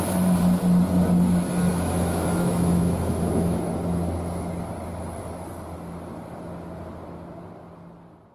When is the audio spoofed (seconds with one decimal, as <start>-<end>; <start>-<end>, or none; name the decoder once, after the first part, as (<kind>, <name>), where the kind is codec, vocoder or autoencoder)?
1.7-3.7 (autoencoder, DAC-VAE)